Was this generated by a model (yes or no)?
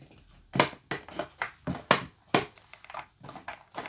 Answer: no